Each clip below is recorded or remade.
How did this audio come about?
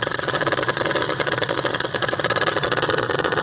remade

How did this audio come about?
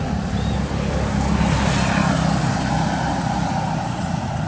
recorded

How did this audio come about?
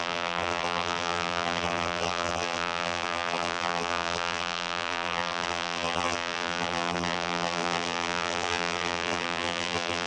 remade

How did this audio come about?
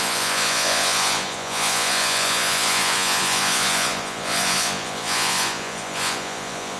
remade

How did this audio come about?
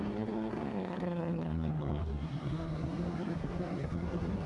remade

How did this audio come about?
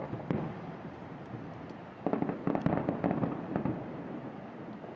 recorded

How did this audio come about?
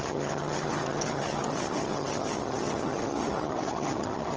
remade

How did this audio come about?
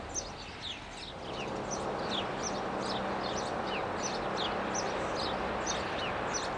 recorded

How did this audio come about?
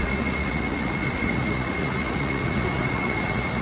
remade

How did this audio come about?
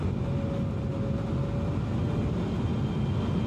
recorded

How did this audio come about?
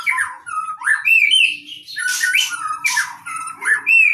remade